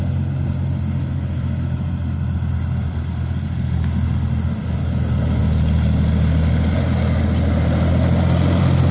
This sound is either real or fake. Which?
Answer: real